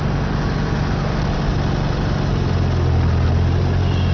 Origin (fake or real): real